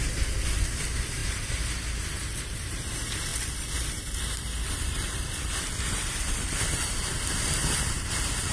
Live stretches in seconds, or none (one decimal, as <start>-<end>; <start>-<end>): 0.0-3.3; 8.1-8.5